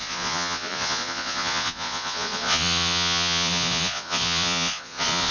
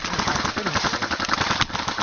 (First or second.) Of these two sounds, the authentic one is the second